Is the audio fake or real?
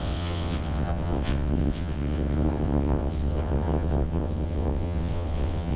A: fake